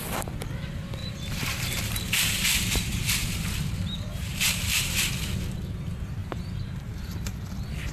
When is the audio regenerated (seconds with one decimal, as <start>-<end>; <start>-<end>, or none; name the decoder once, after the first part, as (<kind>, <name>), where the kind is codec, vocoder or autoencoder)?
1.0-5.1 (vocoder, BigVGAN v2); 6.2-6.9